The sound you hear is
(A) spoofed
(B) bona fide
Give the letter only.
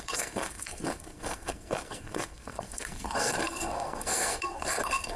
A